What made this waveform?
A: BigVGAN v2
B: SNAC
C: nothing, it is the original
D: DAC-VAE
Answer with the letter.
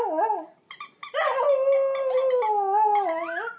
C